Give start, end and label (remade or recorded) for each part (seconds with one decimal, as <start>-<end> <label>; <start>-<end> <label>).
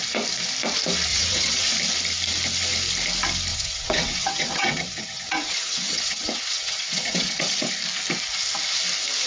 0.0-1.1 recorded; 1.1-1.7 remade; 1.7-3.5 recorded; 3.5-7.7 remade; 7.7-9.3 recorded